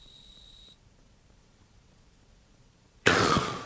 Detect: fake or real fake